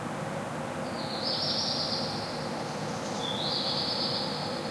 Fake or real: real